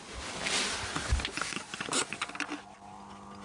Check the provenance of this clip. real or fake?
real